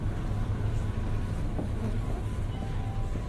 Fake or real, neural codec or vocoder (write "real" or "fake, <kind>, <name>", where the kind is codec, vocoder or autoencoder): real